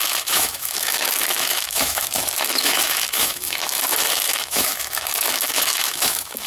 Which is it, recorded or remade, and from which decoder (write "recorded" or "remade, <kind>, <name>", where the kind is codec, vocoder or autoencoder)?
remade, autoencoder, DAC-VAE